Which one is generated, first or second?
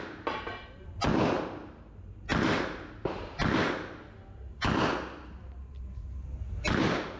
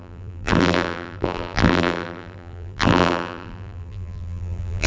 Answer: second